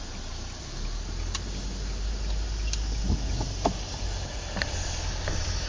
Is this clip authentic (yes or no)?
yes